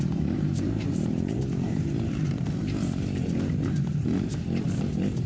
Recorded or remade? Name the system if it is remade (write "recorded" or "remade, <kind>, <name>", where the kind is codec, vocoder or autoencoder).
remade, vocoder, BigVGAN v2